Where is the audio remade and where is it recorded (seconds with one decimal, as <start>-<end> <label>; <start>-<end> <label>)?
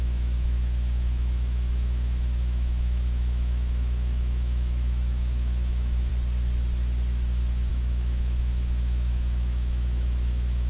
0.0-6.1 remade; 6.1-7.7 recorded; 7.7-10.7 remade